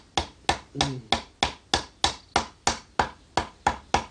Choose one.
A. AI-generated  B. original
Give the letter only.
B